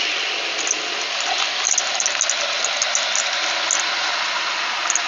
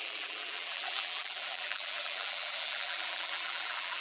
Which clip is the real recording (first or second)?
first